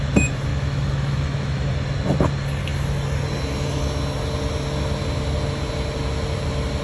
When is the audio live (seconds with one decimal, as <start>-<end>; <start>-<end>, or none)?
0.0-0.5; 1.7-6.8